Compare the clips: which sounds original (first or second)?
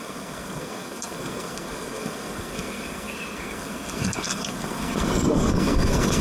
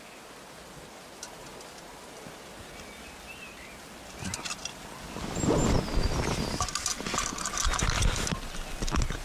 second